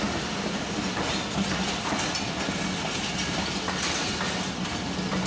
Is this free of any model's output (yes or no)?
yes